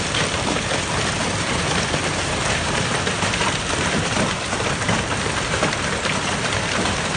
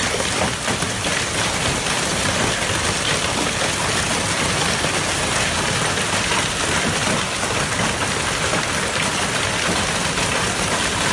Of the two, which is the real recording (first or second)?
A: second